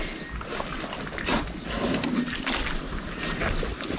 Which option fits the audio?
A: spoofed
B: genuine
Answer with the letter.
B